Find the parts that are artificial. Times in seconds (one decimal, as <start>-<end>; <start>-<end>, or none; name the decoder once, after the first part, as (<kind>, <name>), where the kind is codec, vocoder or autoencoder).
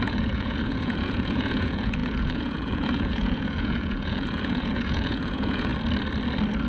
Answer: 0.0-5.7 (vocoder, Vocos)